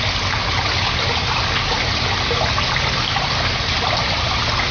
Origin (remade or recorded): recorded